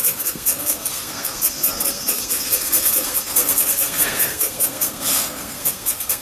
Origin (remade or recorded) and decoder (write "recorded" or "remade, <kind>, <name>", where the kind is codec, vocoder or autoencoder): remade, codec, SNAC